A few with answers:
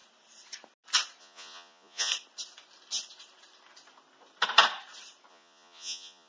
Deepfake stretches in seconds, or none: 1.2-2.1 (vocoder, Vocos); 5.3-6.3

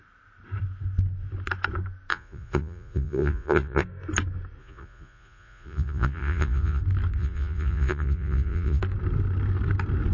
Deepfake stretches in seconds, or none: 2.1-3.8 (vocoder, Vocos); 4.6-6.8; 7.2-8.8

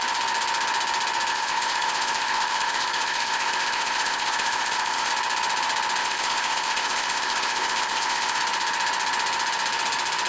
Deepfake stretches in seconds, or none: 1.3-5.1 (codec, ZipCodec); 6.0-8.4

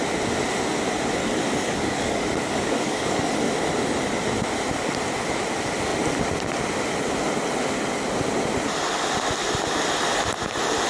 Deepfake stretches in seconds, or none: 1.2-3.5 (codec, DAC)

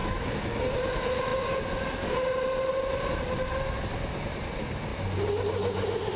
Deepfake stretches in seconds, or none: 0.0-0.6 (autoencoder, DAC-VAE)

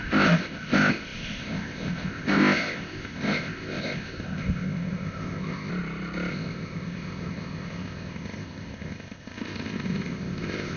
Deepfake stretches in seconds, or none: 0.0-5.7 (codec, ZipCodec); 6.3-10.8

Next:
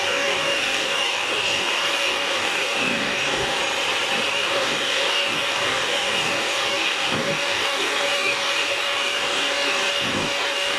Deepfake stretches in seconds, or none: 0.0-3.6 (codec, DAC); 4.3-10.8

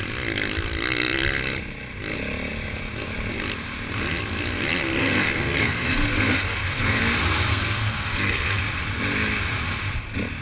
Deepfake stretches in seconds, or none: 5.0-7.0 (codec, SNAC); 7.5-8.6